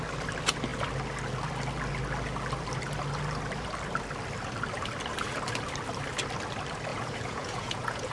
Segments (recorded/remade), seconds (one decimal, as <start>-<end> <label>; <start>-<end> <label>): 0.0-6.9 recorded; 6.9-8.1 remade